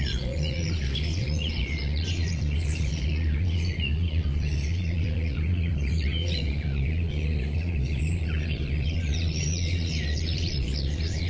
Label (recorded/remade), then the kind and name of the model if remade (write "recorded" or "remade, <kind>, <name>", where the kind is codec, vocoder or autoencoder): remade, vocoder, Vocos